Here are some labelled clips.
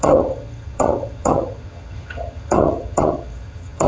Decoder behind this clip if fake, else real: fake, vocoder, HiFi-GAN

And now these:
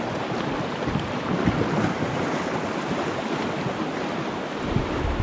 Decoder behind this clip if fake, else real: real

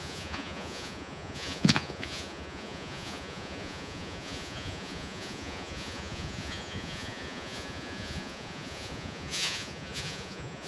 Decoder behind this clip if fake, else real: fake, vocoder, Vocos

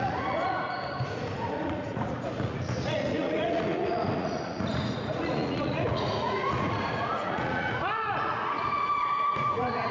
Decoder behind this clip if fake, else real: fake, vocoder, Vocos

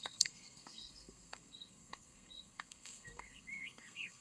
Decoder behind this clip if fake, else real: fake, codec, SNAC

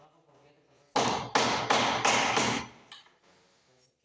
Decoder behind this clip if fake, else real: real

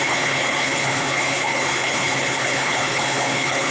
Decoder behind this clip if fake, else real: fake, codec, HILCodec